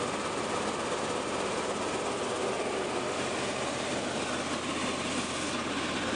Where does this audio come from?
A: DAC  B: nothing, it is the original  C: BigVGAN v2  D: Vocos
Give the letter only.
B